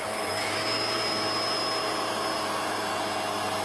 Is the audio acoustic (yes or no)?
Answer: yes